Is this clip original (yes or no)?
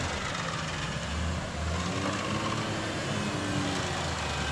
yes